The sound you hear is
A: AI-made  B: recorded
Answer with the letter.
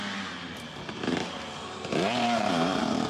A